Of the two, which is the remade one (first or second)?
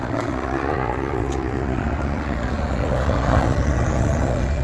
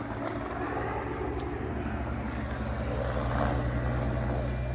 first